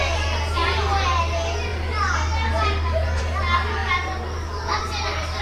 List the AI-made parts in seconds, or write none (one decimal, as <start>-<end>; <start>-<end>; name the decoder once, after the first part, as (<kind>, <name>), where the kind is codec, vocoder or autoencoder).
none